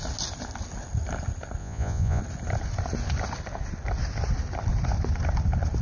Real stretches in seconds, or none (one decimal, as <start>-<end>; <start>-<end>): 0.0-1.6; 2.2-5.8